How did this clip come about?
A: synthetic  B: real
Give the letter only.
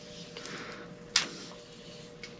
B